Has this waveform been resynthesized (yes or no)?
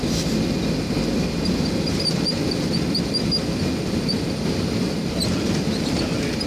no